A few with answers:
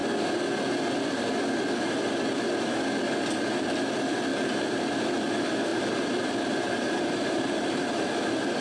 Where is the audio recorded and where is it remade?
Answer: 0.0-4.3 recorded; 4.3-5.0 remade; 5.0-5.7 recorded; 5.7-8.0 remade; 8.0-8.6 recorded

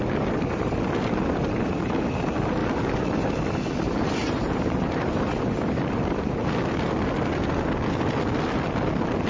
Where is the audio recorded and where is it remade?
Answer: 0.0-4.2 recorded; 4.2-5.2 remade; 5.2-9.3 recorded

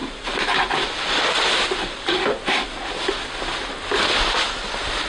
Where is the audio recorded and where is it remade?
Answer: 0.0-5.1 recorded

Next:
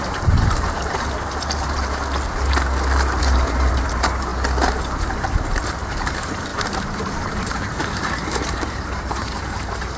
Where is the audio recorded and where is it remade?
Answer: 0.0-2.0 remade; 2.0-3.2 recorded; 3.2-4.3 remade; 4.3-5.7 recorded; 5.7-10.0 remade

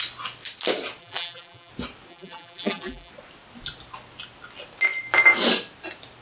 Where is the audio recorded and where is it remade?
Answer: 0.0-1.0 recorded; 1.0-1.7 remade; 1.7-2.1 recorded; 2.1-3.1 remade; 3.1-6.2 recorded